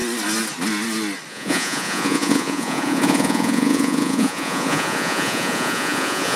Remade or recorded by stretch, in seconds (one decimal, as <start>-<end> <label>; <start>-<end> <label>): 0.0-1.3 recorded; 1.3-6.4 remade